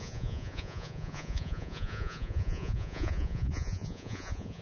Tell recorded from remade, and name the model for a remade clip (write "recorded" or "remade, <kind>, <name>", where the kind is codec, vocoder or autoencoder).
remade, vocoder, Vocos